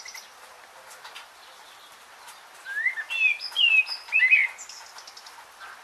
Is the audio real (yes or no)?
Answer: yes